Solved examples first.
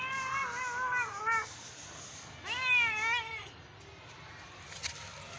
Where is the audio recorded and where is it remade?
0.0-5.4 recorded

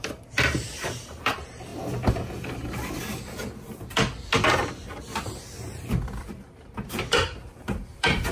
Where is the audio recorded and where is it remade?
0.0-1.7 remade; 1.7-6.2 recorded; 6.2-8.3 remade

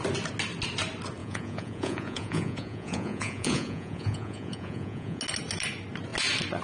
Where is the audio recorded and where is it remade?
0.0-1.2 recorded; 1.2-5.2 remade; 5.2-6.6 recorded

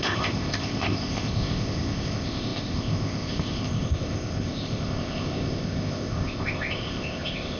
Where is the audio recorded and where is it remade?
0.0-7.6 remade

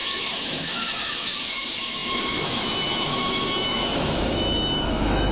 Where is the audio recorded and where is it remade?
0.0-5.3 remade

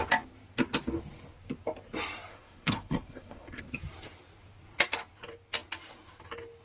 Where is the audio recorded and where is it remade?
0.0-2.3 recorded; 2.3-3.6 remade; 3.6-6.6 recorded

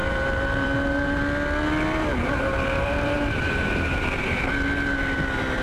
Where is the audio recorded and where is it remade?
0.0-1.2 remade; 1.2-2.2 recorded; 2.2-4.5 remade; 4.5-5.6 recorded